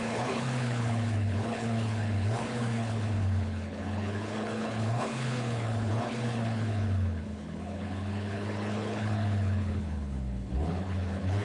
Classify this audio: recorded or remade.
remade